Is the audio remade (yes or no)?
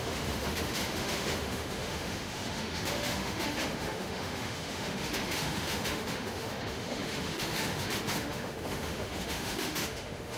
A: yes